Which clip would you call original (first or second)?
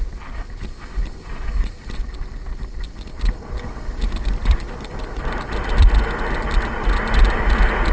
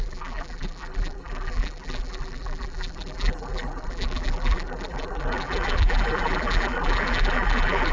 first